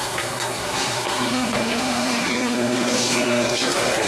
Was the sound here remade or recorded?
remade